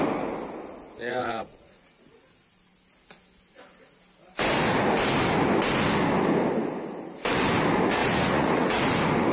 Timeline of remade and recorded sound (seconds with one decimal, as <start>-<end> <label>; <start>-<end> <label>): 0.0-1.1 recorded; 1.1-2.2 remade; 2.2-8.0 recorded; 8.0-8.8 remade; 8.8-9.3 recorded